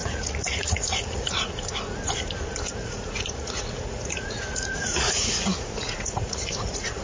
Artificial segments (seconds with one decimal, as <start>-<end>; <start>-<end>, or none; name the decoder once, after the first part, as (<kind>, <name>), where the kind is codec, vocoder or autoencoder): 0.0-1.5 (vocoder, Vocos); 2.8-7.0